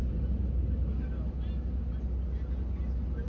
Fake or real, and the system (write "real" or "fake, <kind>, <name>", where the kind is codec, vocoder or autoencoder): real